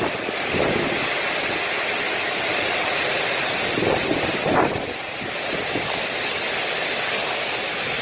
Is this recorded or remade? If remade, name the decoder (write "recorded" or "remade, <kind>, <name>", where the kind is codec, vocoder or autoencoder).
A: recorded